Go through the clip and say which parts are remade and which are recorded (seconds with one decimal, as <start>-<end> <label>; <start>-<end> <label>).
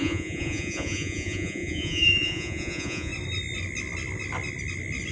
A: 0.0-3.1 remade; 3.1-5.1 recorded